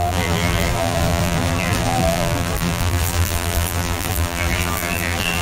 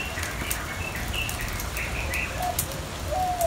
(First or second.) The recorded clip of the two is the second